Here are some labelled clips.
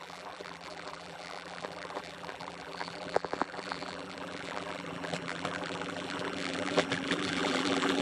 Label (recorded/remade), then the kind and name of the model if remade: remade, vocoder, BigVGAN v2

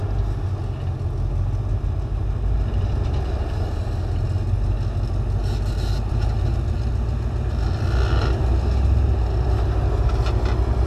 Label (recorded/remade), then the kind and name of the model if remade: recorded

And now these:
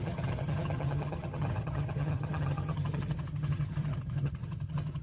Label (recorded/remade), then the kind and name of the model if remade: remade, vocoder, HiFi-GAN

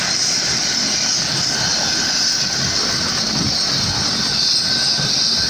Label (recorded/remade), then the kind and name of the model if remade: recorded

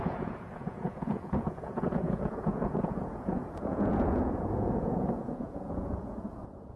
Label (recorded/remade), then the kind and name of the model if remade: remade, vocoder, Vocos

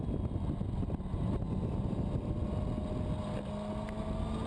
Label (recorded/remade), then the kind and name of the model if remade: recorded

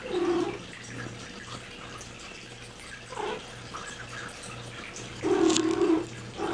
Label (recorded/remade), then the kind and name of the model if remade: recorded